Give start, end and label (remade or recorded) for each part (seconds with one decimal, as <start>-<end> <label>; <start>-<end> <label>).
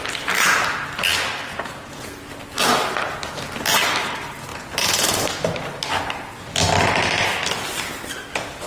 0.0-1.5 recorded; 1.5-2.3 remade; 2.3-4.5 recorded; 4.5-5.2 remade; 5.2-8.7 recorded